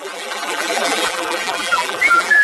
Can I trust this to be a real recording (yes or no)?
no